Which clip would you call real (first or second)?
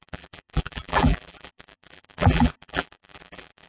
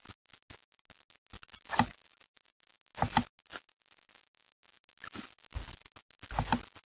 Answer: second